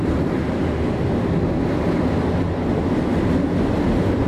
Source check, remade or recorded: recorded